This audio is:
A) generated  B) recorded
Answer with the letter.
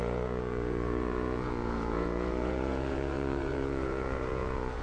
A